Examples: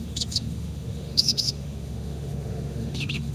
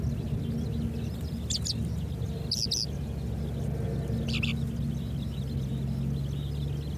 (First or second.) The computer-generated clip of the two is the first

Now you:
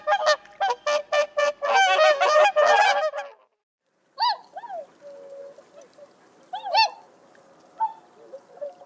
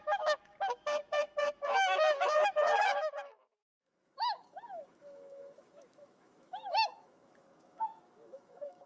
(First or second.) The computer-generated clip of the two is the second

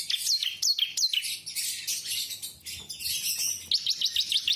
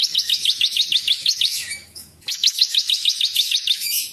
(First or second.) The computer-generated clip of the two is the second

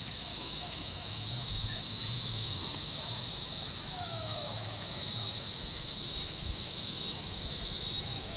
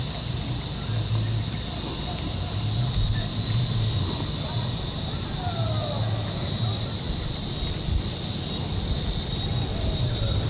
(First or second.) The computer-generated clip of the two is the first